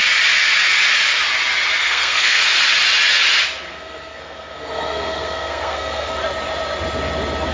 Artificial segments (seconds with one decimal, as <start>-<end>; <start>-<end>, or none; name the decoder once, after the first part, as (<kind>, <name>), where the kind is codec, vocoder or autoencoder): 1.8-2.4 (codec, SNAC); 3.7-6.2